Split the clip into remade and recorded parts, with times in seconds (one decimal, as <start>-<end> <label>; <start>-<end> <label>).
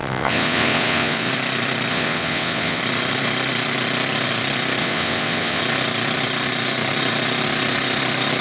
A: 0.0-1.3 remade; 1.3-1.9 recorded; 1.9-2.8 remade; 2.8-4.8 recorded; 4.8-5.6 remade; 5.6-8.4 recorded